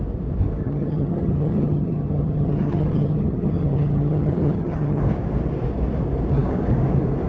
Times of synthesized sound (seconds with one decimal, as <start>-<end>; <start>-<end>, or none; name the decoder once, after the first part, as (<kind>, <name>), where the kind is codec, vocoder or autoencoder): 0.6-5.0 (vocoder, HiFi-GAN)